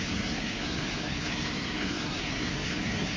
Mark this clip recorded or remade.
remade